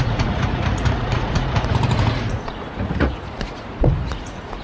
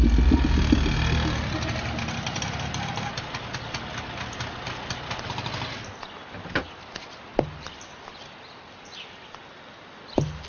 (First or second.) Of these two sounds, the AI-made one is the first